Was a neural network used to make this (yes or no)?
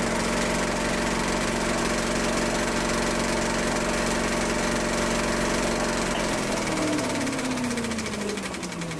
no